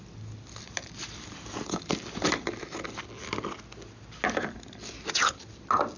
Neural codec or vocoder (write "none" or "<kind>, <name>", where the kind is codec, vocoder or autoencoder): none